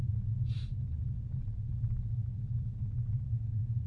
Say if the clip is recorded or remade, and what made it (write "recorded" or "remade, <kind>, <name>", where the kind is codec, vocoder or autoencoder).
recorded